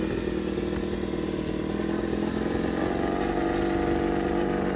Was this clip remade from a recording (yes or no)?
no